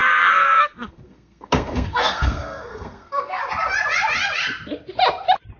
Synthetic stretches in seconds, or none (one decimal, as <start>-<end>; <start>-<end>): 0.0-3.4